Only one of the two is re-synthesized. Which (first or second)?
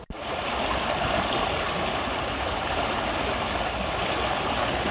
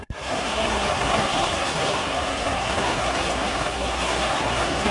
second